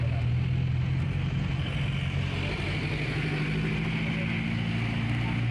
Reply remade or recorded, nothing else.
recorded